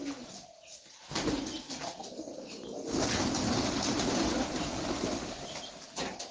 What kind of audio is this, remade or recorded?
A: recorded